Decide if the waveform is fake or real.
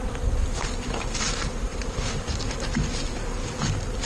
real